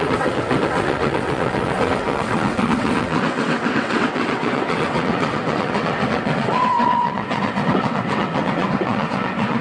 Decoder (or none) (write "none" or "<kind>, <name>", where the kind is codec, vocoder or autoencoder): vocoder, WaveNeXt